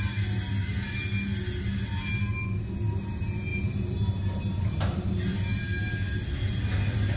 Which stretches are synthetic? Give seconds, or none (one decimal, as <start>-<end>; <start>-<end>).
none